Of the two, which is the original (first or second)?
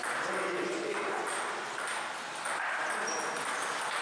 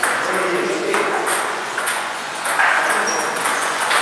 first